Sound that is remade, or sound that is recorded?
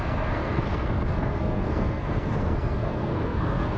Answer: remade